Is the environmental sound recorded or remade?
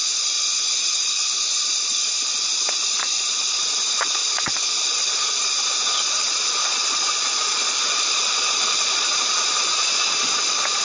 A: remade